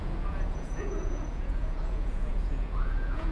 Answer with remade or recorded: remade